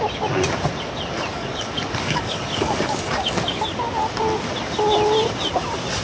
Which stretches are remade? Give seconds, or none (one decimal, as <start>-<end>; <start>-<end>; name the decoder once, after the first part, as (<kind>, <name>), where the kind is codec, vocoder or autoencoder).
1.3-3.6 (codec, DAC)